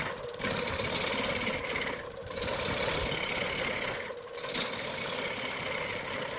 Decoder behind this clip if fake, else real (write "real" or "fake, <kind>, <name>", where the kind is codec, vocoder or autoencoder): real